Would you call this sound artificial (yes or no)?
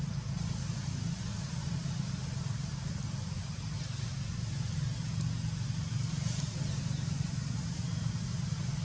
no